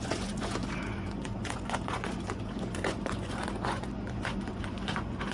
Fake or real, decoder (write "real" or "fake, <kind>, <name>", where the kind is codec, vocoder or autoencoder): fake, vocoder, Vocos